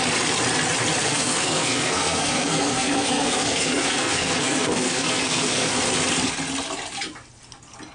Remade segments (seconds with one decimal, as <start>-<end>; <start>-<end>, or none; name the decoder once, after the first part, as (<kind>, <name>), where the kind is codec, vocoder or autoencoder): 1.0-5.7 (codec, SNAC)